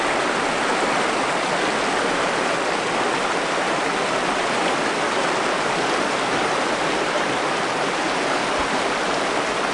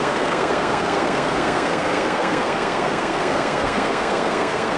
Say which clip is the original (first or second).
first